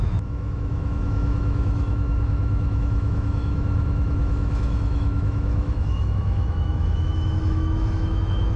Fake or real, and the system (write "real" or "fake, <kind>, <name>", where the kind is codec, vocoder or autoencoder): fake, autoencoder, DAC-VAE